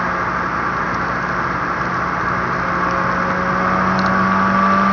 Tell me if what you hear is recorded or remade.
recorded